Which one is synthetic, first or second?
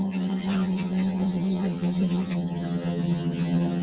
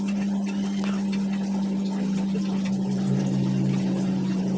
first